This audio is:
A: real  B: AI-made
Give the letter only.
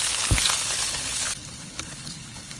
B